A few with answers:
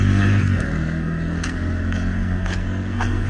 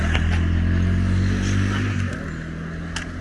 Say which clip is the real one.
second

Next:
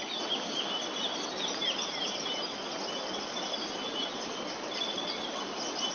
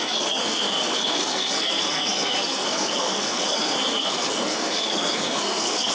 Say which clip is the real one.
first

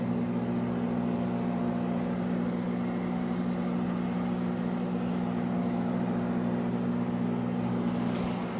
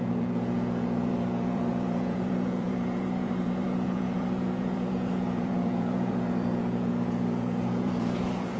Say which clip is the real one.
first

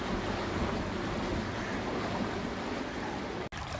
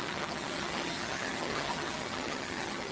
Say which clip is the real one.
first